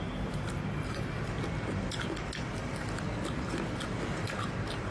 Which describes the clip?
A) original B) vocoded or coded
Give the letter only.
A